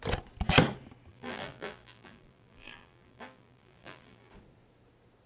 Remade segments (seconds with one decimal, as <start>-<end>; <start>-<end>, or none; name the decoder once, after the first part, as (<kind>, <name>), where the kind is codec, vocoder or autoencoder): 1.1-4.3 (vocoder, BigVGAN v2)